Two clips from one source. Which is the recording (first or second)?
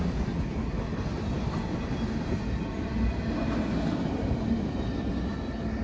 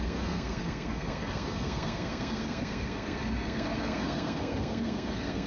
first